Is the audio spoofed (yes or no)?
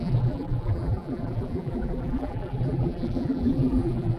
yes